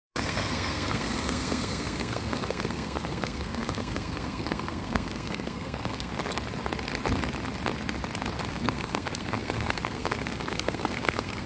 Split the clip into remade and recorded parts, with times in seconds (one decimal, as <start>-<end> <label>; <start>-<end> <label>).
0.0-6.1 remade; 6.1-8.5 recorded; 8.5-11.5 remade